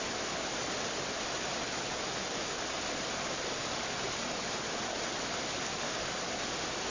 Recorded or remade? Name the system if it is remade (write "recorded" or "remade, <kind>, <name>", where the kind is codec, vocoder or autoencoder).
remade, vocoder, BigVGAN v2